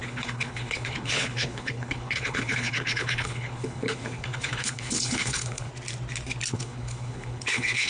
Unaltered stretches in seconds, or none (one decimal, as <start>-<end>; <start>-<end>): 5.7-6.5